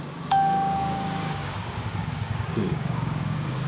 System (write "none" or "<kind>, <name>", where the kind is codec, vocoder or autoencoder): codec, DAC